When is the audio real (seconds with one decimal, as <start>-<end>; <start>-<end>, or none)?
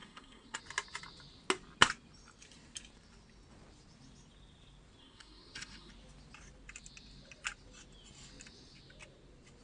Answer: 0.6-5.0; 5.9-9.6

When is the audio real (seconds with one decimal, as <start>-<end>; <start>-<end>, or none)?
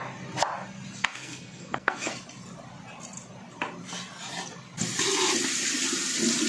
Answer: 0.0-1.0; 2.1-6.5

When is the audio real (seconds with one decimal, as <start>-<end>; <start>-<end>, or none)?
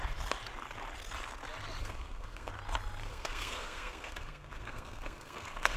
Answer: 0.0-1.8; 2.5-3.0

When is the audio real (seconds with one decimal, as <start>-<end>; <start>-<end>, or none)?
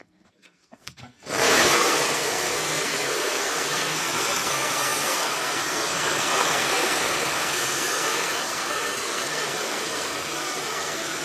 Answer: none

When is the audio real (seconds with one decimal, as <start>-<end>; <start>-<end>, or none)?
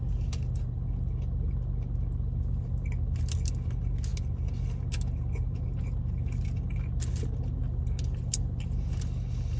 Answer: 0.0-9.6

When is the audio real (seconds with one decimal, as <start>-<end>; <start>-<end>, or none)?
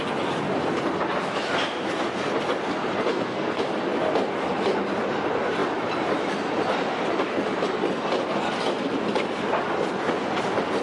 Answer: 0.0-3.1; 3.6-10.8